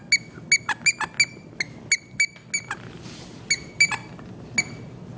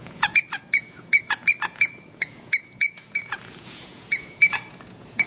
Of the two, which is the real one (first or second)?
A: first